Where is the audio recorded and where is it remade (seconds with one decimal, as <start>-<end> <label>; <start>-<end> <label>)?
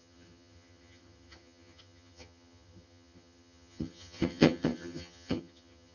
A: 0.0-5.9 remade